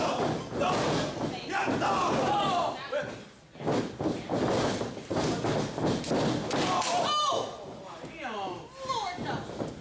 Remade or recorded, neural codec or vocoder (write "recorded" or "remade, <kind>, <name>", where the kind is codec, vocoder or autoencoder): recorded